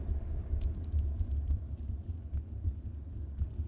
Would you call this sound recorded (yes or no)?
yes